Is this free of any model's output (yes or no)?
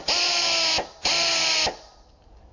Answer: yes